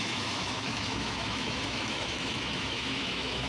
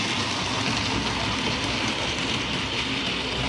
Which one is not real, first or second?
first